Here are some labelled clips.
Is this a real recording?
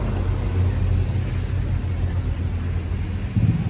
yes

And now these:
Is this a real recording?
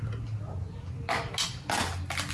yes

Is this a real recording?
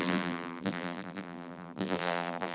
no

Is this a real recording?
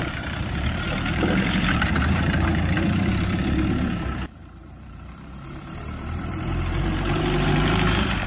no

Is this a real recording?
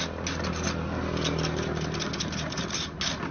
yes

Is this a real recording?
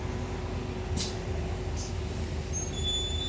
yes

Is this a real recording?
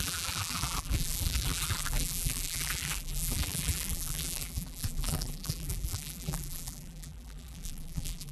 no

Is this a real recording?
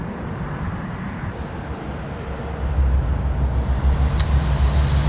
no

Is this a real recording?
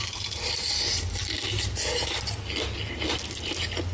yes